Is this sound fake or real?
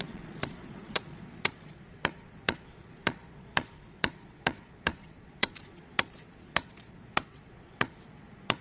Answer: fake